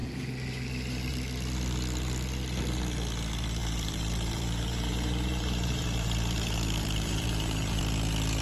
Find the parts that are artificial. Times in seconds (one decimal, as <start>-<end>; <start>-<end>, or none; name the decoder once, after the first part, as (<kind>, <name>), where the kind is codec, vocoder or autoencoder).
3.6-7.8 (vocoder, BigVGAN v2)